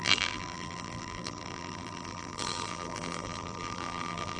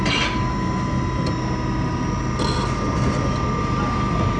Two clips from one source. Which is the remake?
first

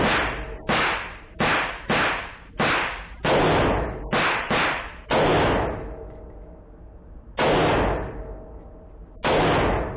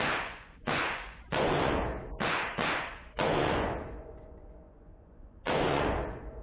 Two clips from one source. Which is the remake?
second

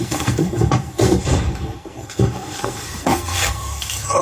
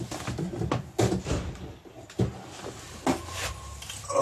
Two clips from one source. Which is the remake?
first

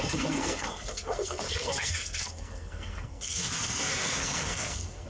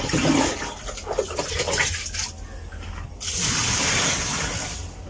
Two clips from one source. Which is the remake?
first